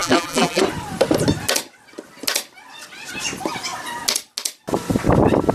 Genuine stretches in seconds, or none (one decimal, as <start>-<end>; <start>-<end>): 0.6-5.5